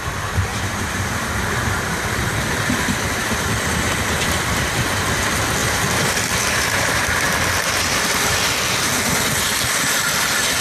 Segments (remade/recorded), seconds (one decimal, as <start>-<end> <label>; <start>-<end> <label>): 0.0-0.5 recorded; 0.5-1.3 remade; 1.3-5.6 recorded; 5.6-7.0 remade; 7.0-10.6 recorded